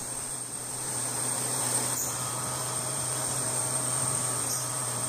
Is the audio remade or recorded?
remade